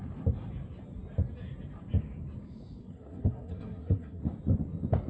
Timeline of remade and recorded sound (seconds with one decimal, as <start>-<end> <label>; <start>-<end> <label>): 0.0-2.8 recorded; 2.8-4.2 remade; 4.2-5.1 recorded